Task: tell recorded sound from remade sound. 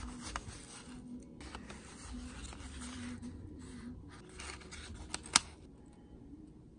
recorded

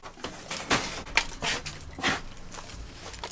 recorded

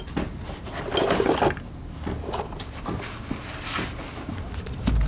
recorded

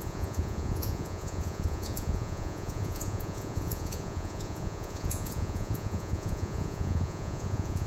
remade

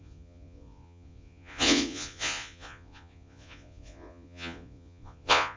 remade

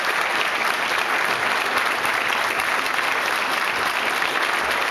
recorded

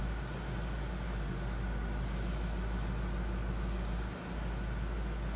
recorded